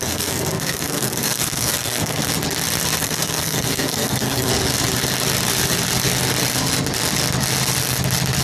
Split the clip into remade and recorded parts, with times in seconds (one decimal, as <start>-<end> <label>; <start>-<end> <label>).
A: 0.0-2.2 remade; 2.2-3.0 recorded; 3.0-4.5 remade; 4.5-8.4 recorded